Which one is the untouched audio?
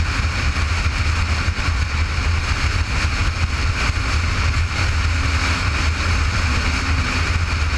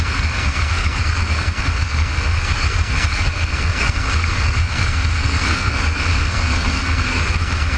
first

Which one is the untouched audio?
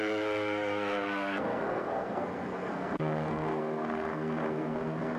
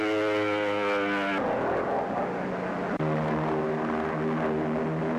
second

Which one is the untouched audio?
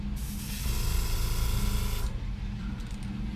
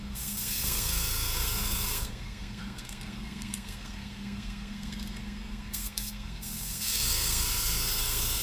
first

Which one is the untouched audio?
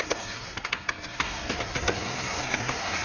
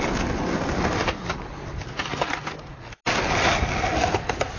second